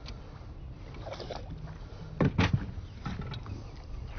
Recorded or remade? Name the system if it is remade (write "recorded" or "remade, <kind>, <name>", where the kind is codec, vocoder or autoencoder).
recorded